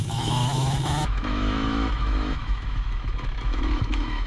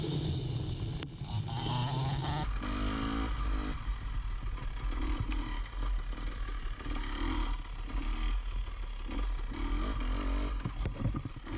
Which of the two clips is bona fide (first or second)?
second